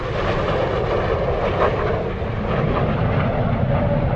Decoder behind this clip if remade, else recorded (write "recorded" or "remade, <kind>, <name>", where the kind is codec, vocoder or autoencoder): recorded